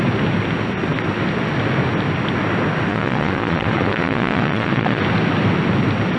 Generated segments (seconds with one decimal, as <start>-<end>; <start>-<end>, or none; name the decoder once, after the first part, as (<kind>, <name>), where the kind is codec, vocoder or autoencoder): 2.9-5.0 (vocoder, Vocos)